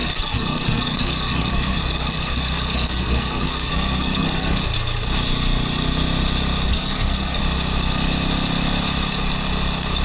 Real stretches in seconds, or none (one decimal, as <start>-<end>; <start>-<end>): 4.6-6.7; 7.4-10.0